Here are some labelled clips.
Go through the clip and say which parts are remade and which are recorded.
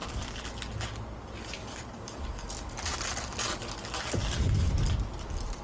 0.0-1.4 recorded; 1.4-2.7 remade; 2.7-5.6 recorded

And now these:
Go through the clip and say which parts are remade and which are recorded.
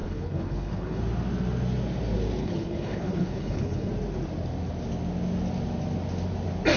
0.0-1.0 remade; 1.0-2.4 recorded; 2.4-3.9 remade; 3.9-6.8 recorded